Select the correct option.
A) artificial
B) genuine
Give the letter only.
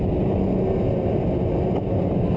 B